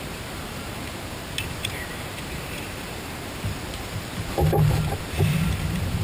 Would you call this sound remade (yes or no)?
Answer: yes